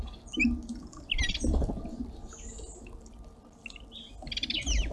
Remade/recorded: recorded